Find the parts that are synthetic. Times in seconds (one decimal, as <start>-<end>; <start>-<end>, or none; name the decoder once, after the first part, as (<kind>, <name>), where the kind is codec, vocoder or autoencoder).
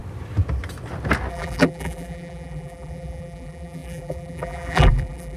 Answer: 1.3-5.4 (vocoder, BigVGAN v2)